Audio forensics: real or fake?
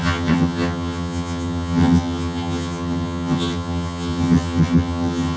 fake